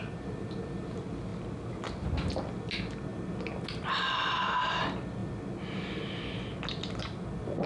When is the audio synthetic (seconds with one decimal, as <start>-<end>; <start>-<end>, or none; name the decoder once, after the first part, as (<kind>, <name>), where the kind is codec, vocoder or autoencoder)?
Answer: none